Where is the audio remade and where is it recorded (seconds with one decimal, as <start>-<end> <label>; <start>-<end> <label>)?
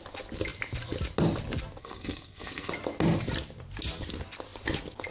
0.0-1.8 recorded; 1.8-2.7 remade; 2.7-5.1 recorded